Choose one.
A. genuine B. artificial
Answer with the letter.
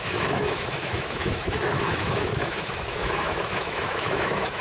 B